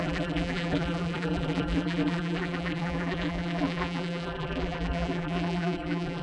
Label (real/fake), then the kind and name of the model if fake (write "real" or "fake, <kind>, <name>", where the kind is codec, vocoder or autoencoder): fake, vocoder, BigVGAN v2